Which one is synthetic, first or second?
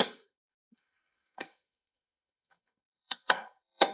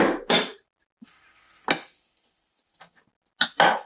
first